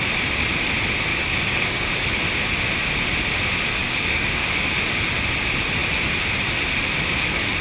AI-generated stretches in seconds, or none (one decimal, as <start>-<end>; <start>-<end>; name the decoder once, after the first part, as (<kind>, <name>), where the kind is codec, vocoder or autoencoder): 1.1-1.9 (codec, DAC); 3.8-4.5